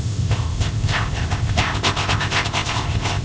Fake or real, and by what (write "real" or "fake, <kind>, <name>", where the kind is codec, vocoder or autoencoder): fake, codec, ZipCodec